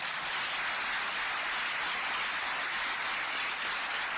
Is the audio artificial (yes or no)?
no